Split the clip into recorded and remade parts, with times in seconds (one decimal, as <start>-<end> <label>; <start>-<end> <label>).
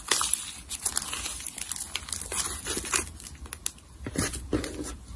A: 0.0-0.9 remade; 0.9-3.9 recorded; 3.9-5.2 remade